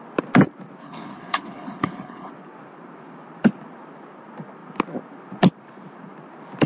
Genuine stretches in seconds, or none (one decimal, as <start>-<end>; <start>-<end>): 0.0-0.8; 2.3-6.7